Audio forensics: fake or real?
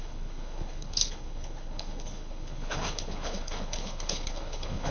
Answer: fake